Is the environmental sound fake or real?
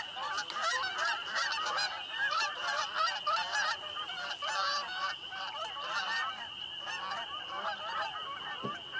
real